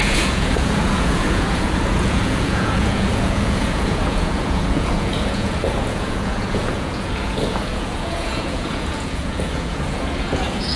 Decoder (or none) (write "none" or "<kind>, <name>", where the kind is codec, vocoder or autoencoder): vocoder, Vocos